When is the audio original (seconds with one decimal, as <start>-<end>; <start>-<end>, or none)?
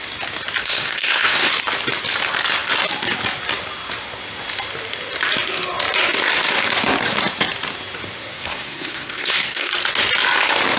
0.0-0.6; 1.5-8.3; 9.7-10.8